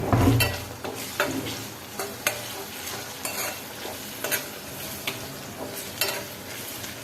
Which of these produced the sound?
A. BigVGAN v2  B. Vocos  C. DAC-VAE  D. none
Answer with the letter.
D